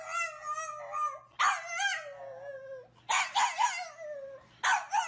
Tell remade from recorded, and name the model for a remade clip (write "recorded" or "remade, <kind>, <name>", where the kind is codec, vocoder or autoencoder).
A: recorded